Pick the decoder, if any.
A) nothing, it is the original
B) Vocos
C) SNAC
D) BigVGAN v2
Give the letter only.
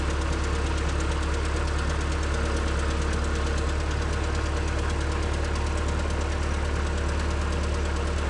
A